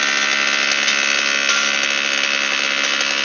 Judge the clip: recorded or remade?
recorded